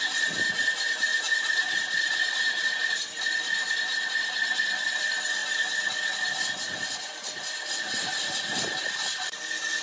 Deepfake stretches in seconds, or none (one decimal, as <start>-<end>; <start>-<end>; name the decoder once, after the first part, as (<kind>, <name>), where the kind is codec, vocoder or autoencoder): 1.1-3.2 (vocoder, BigVGAN v2)